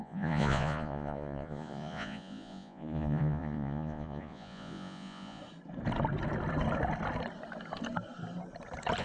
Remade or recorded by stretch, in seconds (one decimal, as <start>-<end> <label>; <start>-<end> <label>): 0.0-5.4 remade; 5.4-9.0 recorded